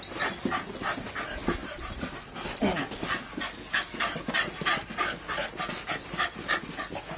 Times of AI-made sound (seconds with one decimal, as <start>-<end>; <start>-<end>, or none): none